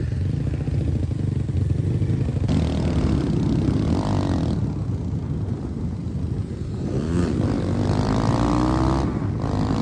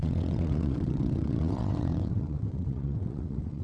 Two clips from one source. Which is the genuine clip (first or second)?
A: first